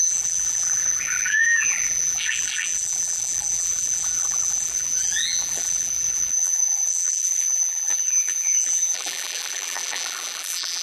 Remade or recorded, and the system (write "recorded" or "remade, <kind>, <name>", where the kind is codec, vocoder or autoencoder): remade, vocoder, BigVGAN v2